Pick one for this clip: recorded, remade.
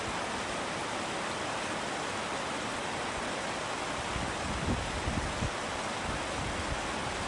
remade